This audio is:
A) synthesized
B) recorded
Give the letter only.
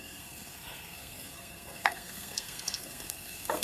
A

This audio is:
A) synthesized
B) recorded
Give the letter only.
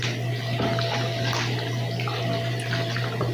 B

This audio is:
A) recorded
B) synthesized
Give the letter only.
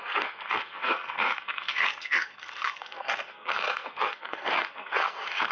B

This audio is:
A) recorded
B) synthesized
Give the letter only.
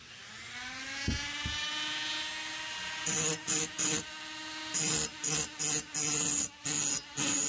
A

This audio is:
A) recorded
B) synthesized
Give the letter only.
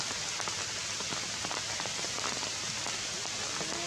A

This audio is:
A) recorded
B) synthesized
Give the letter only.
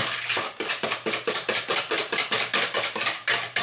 A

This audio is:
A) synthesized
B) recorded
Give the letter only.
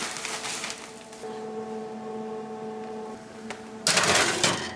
B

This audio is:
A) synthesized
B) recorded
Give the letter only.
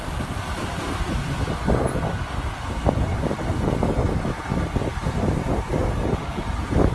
B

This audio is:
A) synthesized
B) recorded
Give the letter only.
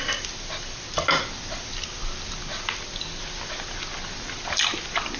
B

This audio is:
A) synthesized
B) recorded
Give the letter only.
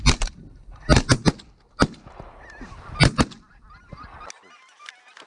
B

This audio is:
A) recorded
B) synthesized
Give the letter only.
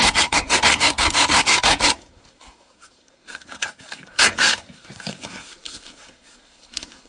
B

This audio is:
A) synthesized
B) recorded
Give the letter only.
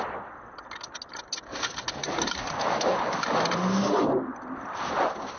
B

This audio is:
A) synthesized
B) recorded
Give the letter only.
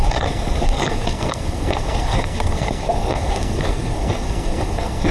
A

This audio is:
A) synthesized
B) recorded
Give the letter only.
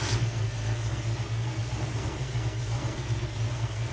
A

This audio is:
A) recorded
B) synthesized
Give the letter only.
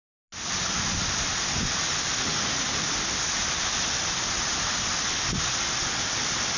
A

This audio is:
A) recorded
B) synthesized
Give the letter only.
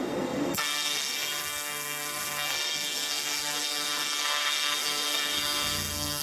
B